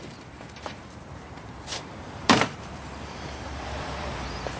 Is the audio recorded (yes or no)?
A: no